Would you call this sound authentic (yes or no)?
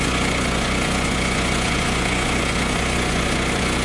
no